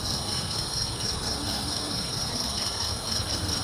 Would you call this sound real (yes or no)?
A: no